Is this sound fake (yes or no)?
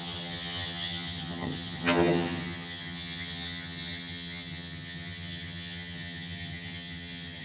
yes